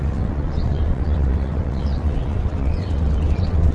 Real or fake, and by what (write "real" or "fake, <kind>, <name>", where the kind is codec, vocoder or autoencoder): fake, vocoder, WaveNeXt